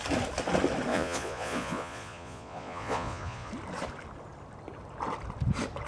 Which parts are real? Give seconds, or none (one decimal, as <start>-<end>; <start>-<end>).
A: 0.0-0.9; 3.5-5.9